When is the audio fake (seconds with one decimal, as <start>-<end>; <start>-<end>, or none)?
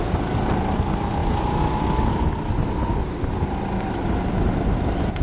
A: none